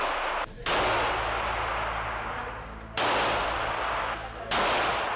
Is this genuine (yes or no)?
yes